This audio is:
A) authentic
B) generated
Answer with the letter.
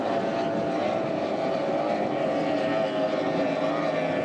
A